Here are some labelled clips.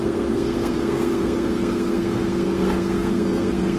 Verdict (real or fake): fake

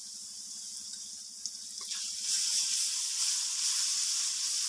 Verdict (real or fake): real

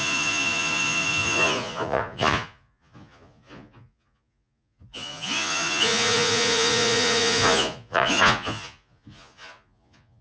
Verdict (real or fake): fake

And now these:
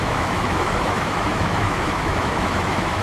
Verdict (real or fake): fake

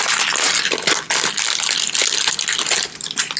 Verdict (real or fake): real